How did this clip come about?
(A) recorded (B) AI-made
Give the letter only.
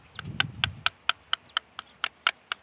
A